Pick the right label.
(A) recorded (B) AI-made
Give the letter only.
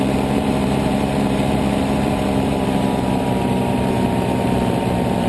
B